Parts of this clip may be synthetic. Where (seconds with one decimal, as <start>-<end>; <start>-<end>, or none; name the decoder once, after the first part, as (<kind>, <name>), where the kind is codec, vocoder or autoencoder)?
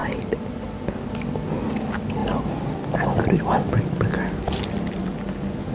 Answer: 2.2-3.3 (vocoder, BigVGAN v2)